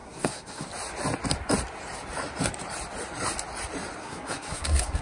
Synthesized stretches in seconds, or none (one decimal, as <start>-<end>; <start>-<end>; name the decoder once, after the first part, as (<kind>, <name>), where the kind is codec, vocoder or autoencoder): 0.0-0.7 (codec, SNAC); 4.0-5.0